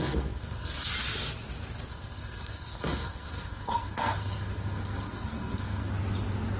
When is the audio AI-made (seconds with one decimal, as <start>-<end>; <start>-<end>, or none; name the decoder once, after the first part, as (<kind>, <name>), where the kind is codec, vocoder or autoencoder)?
0.0-0.9 (codec, SNAC); 1.9-5.9